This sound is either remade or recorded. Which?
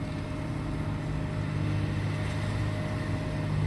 recorded